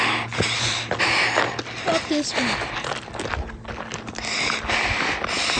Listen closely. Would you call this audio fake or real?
real